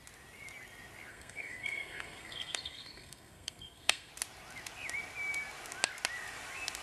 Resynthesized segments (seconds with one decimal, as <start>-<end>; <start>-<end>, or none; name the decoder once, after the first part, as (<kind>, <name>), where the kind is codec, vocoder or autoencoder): 1.1-4.1 (codec, SNAC)